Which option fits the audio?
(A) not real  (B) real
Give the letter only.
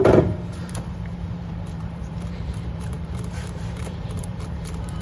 A